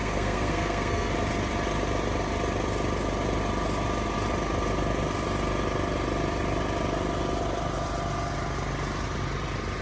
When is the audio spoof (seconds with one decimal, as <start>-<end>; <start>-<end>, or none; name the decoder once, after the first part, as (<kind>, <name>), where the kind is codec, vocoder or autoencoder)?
0.0-1.1 (codec, SNAC)